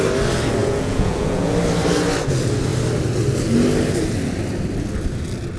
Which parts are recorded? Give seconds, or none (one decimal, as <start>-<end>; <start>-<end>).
0.0-0.6; 1.5-5.6